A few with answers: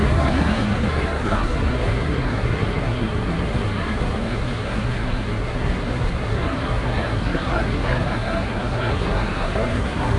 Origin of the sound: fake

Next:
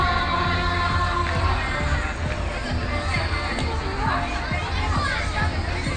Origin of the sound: real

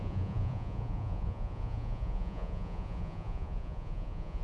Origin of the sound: fake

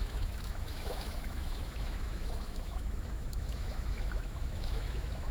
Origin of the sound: fake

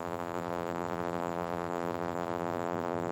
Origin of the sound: fake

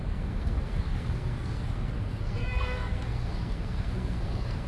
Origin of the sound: fake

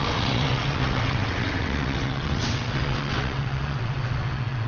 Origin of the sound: fake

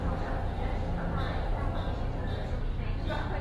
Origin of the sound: real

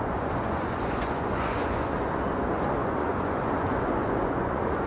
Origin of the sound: fake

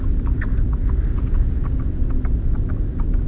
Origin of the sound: real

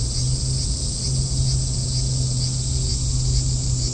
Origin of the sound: real